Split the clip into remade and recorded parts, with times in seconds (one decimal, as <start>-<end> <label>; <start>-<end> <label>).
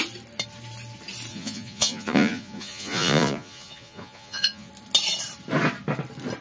0.0-1.3 recorded; 1.3-4.7 remade; 4.7-6.4 recorded